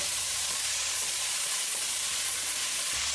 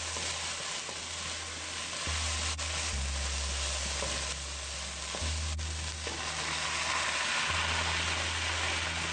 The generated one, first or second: first